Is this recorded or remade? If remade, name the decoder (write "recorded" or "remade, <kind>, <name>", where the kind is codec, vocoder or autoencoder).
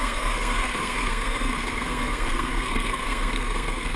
remade, codec, SNAC